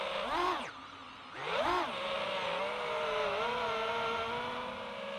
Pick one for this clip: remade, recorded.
recorded